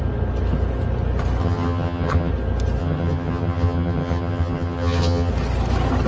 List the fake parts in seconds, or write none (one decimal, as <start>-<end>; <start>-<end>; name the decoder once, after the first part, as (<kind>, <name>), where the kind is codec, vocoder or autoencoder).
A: 1.4-2.3 (vocoder, HiFi-GAN); 2.8-5.3